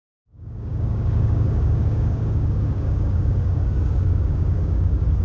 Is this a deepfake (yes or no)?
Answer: yes